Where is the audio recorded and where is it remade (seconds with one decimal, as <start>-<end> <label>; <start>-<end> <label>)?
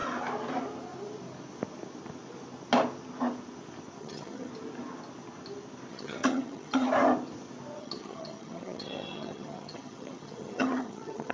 0.0-4.0 recorded; 4.0-4.5 remade; 4.5-5.9 recorded; 5.9-6.9 remade; 6.9-7.8 recorded; 7.8-11.3 remade